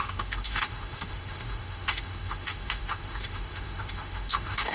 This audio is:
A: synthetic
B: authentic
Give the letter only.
A